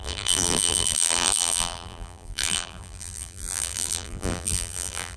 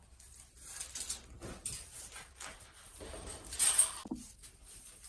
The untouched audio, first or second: second